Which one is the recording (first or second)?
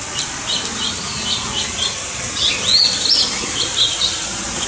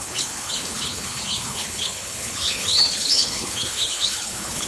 first